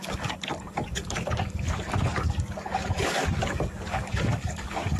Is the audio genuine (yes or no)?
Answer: no